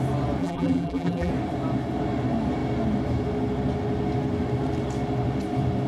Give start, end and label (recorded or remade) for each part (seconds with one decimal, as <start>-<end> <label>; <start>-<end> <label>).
0.0-0.4 recorded; 0.4-1.3 remade; 1.3-5.9 recorded